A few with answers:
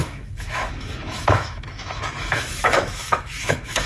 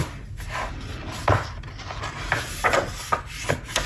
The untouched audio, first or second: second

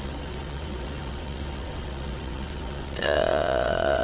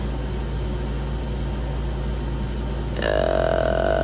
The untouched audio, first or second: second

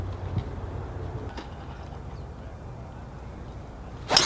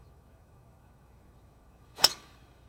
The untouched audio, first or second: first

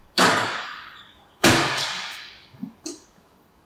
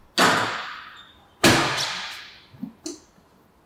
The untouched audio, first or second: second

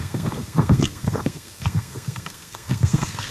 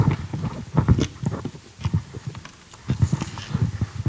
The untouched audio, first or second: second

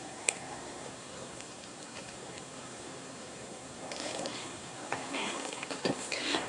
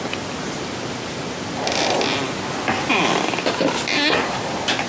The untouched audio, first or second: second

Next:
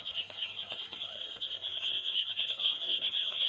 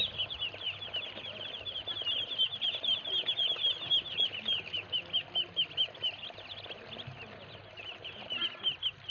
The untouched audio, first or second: second